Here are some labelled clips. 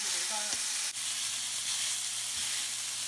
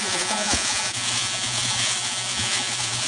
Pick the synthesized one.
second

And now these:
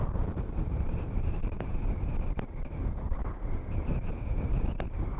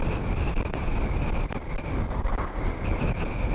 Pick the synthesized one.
first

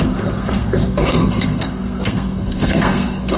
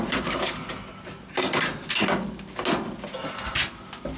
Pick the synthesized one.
first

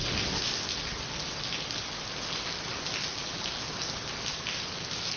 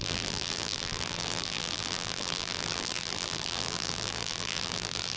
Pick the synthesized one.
second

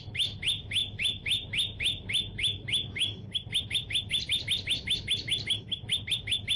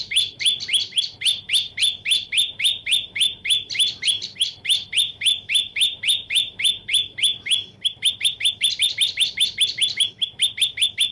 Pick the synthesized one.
second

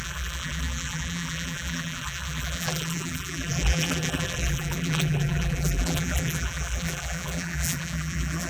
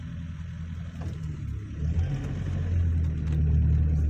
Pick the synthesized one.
first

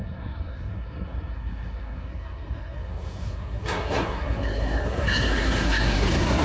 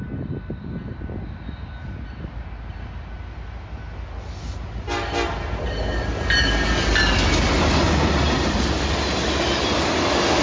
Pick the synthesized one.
first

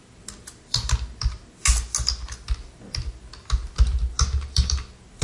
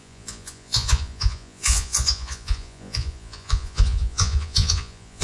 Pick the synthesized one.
second